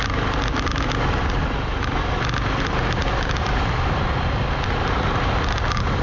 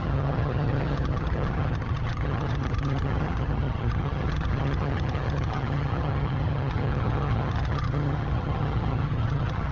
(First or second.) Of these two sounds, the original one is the first